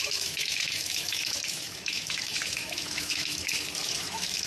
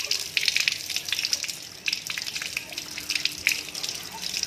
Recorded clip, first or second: second